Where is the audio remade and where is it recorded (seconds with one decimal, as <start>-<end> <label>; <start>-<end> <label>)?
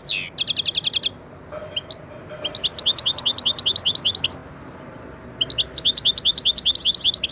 0.0-7.3 recorded